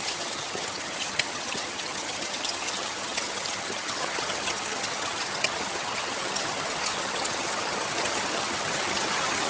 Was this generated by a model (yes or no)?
yes